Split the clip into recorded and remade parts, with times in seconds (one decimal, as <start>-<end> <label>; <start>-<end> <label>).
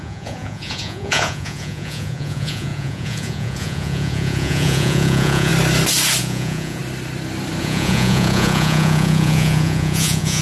0.0-5.5 remade; 5.5-6.2 recorded; 6.2-6.8 remade; 6.8-7.6 recorded; 7.6-10.4 remade